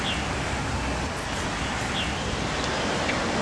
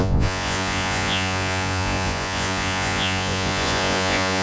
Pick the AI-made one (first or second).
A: second